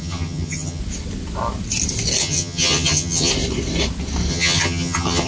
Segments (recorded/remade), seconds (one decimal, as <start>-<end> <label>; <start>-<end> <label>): 0.0-0.8 remade; 0.8-2.2 recorded; 2.2-3.3 remade; 3.3-4.3 recorded; 4.3-5.3 remade